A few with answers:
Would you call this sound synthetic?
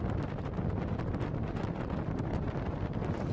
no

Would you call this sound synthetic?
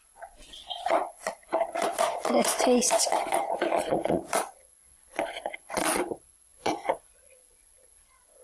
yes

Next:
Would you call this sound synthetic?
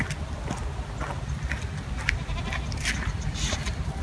no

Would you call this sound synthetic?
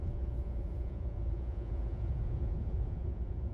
yes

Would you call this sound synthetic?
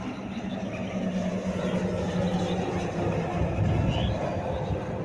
no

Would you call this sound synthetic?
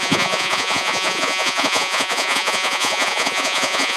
yes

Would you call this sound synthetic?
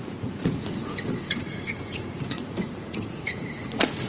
yes